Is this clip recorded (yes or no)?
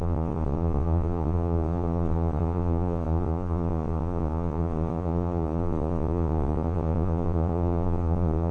no